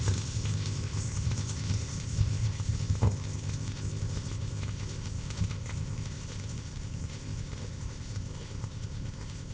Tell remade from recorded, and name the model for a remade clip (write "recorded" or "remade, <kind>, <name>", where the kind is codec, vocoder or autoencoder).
remade, codec, ZipCodec